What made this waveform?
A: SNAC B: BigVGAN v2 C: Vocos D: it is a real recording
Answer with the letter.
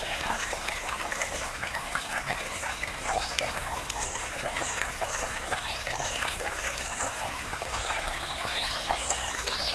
A